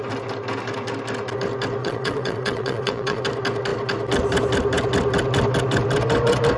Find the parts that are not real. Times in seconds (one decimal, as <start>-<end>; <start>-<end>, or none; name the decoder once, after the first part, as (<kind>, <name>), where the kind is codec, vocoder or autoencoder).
1.8-3.2 (vocoder, WaveNeXt)